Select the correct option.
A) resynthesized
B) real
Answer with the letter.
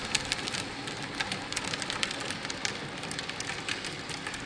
B